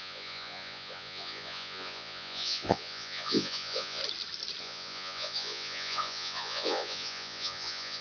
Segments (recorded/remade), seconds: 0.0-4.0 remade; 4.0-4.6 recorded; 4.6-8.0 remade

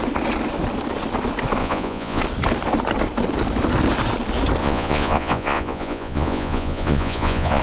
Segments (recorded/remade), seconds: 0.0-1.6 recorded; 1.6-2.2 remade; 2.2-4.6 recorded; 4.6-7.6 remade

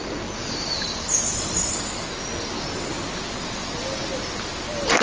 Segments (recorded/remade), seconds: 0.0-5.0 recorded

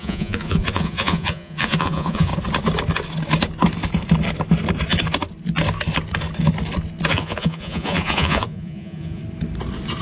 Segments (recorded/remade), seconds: 0.0-2.3 remade; 2.3-7.1 recorded; 7.1-9.2 remade; 9.2-10.0 recorded